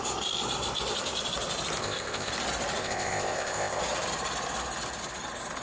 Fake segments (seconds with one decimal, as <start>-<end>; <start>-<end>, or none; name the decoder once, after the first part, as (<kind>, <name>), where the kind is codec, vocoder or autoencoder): 1.8-2.3 (codec, ZipCodec); 2.8-3.8